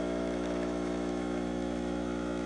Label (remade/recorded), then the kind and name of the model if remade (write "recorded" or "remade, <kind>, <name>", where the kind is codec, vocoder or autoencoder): remade, autoencoder, DAC-VAE